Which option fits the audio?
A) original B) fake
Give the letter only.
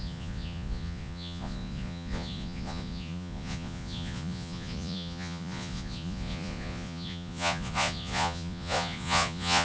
B